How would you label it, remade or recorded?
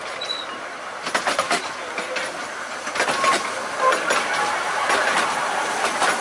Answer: recorded